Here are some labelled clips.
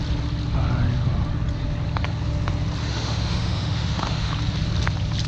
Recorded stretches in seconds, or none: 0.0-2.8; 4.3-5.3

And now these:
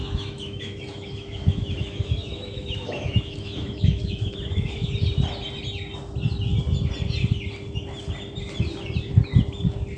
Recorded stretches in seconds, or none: 4.9-10.0

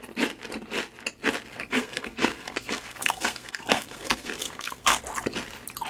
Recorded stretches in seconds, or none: 0.0-1.5; 5.0-5.9